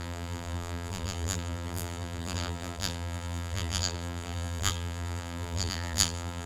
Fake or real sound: fake